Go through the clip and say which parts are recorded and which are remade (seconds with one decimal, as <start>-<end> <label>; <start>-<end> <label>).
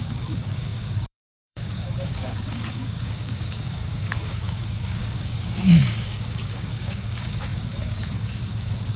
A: 0.0-9.0 remade